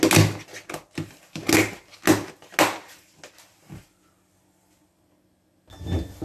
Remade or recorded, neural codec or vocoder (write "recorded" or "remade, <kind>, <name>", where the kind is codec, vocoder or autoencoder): recorded